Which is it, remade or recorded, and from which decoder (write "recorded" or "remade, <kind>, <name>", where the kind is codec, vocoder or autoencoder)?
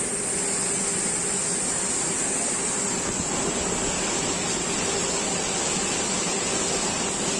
recorded